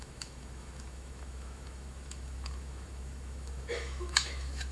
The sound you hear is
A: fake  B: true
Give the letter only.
A